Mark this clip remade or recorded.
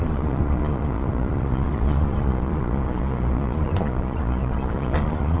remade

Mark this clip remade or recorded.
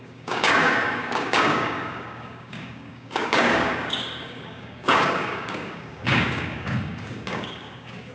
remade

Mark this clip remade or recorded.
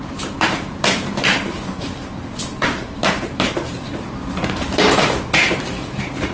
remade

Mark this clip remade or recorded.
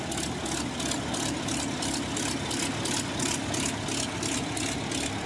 recorded